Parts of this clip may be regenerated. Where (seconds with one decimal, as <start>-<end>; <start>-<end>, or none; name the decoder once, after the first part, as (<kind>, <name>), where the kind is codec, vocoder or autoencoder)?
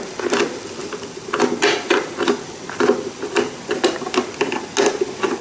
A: 0.8-3.7 (vocoder, BigVGAN v2)